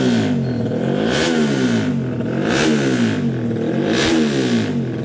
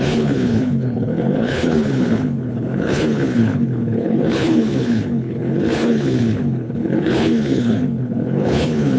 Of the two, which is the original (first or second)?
first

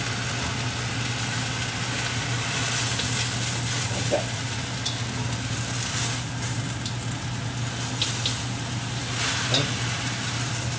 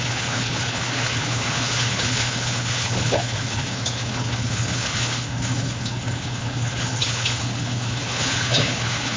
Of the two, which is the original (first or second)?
first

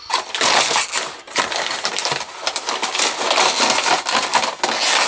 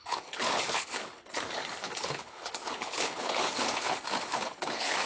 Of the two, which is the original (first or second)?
first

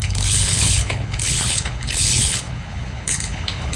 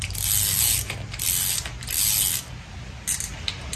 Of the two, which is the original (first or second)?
second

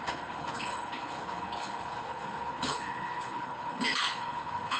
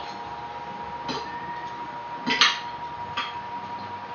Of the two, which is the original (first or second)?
second